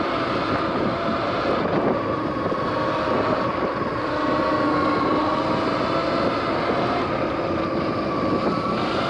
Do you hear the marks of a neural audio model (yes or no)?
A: no